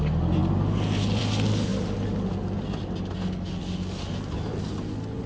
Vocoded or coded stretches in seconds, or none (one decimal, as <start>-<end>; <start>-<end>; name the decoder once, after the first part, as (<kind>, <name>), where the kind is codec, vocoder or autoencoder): none